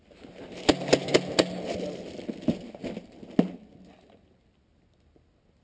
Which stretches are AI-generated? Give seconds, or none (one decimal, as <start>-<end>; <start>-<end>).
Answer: none